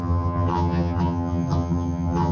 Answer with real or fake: fake